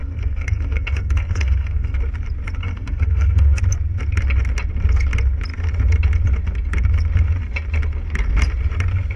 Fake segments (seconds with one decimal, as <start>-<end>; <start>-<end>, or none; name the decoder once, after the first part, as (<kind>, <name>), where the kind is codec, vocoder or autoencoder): 0.0-2.0 (codec, SNAC); 2.6-3.6